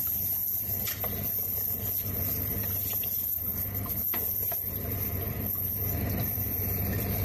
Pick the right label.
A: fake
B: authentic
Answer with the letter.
A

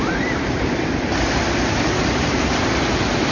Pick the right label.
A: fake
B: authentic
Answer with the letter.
A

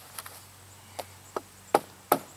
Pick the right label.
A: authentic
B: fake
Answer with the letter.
A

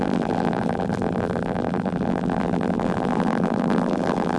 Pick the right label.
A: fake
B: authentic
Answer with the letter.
A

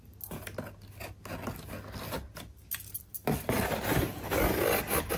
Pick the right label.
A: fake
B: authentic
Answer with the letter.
B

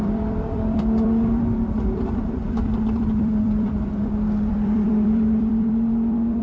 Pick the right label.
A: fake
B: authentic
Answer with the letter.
A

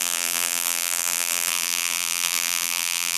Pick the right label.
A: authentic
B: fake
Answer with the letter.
B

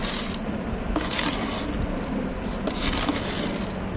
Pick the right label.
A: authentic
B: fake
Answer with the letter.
A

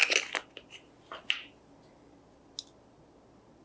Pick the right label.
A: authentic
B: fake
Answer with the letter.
A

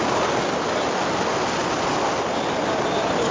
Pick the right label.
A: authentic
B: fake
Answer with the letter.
A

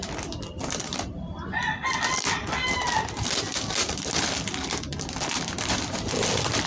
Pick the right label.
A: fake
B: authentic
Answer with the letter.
A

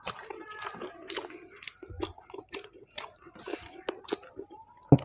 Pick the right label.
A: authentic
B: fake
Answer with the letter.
B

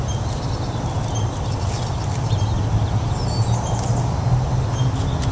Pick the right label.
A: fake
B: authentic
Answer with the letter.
B